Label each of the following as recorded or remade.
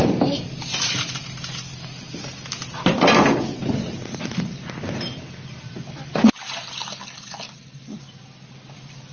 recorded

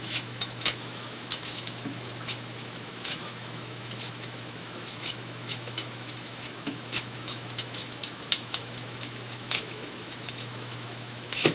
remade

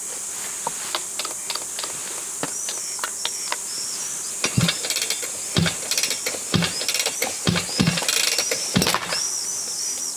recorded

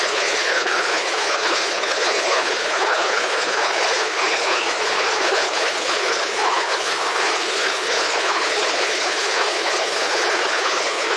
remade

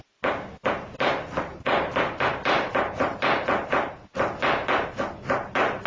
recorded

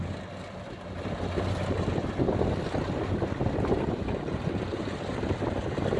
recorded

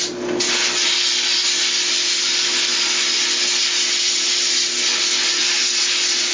recorded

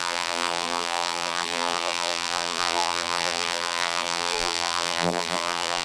remade